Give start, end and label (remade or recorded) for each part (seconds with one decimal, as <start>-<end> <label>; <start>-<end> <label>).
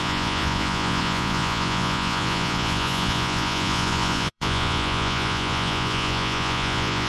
0.0-7.1 remade